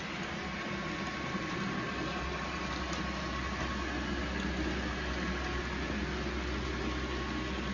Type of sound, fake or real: real